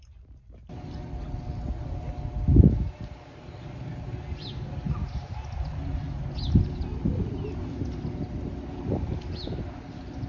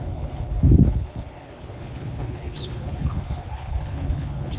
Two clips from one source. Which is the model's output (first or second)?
second